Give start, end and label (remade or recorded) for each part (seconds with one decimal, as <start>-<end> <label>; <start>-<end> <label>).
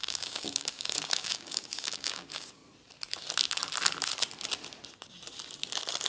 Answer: 0.0-2.6 remade; 2.6-6.1 recorded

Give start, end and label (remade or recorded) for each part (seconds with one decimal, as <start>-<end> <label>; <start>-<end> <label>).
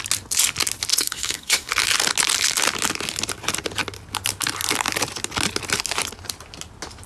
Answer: 0.0-0.9 recorded; 0.9-1.7 remade; 1.7-7.1 recorded